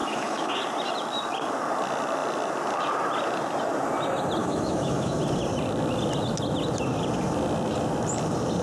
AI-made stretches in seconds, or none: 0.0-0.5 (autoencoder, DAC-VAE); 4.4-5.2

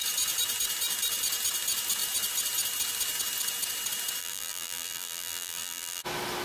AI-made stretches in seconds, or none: 4.2-6.0 (vocoder, BigVGAN v2)

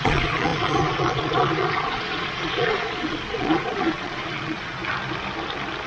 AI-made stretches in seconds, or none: 0.0-4.8 (vocoder, Vocos)

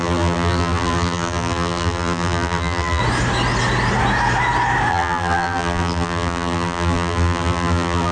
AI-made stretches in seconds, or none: 0.0-3.0 (vocoder, BigVGAN v2); 4.9-8.1

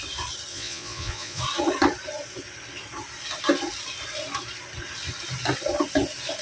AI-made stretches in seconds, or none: 0.5-1.4 (vocoder, Vocos)

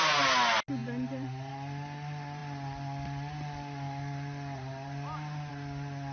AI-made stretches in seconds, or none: none

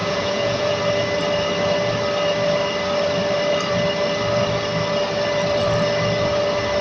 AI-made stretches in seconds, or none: 0.0-0.8 (vocoder, Vocos)

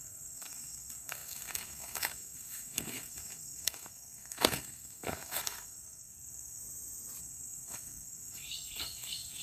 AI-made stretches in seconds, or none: 0.0-6.6 (codec, SNAC); 7.2-9.4